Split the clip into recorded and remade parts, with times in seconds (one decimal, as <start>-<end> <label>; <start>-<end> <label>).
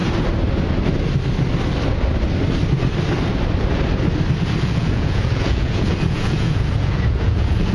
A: 0.0-4.6 recorded; 4.6-7.7 remade